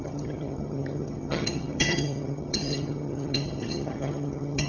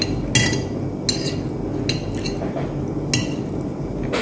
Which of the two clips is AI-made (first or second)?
first